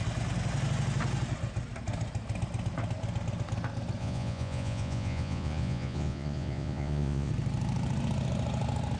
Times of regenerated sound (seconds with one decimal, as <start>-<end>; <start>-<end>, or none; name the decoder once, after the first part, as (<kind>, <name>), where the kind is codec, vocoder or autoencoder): 4.0-7.3 (vocoder, Vocos)